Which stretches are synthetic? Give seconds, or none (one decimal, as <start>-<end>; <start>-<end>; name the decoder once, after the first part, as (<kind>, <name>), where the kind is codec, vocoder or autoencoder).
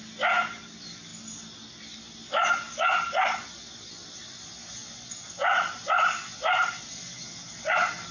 none